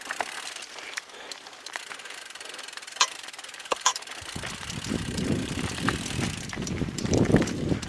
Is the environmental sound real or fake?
fake